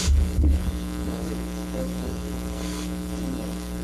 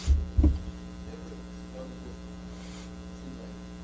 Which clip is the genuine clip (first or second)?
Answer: second